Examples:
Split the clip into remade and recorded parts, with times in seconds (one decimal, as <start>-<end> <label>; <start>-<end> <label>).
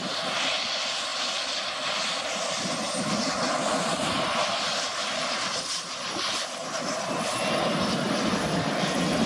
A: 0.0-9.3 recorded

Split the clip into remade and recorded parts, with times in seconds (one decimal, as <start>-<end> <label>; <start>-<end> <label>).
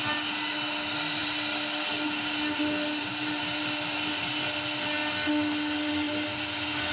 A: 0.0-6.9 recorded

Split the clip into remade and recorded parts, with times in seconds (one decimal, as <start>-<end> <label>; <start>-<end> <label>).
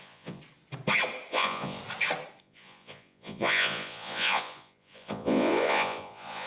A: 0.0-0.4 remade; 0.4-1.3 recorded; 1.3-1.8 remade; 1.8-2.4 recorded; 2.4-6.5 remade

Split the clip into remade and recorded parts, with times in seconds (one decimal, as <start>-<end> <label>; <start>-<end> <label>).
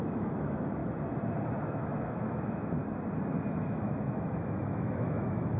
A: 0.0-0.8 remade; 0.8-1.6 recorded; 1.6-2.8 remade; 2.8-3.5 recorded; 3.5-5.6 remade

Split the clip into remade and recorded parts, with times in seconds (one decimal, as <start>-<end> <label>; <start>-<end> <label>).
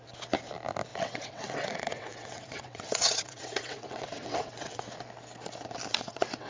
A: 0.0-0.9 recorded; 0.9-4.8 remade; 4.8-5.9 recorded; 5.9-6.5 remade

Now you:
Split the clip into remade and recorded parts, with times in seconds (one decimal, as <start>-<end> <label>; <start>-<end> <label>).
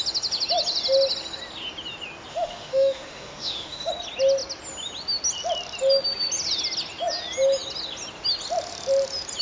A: 0.0-2.3 recorded; 2.3-3.9 remade; 3.9-9.4 recorded